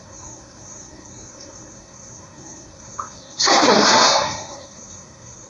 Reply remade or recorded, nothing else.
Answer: remade